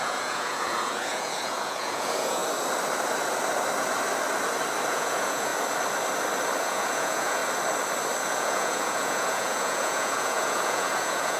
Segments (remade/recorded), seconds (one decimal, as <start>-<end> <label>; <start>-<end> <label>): 0.0-2.4 remade; 2.4-4.9 recorded; 4.9-5.5 remade; 5.5-6.6 recorded; 6.6-7.4 remade; 7.4-8.3 recorded; 8.3-11.4 remade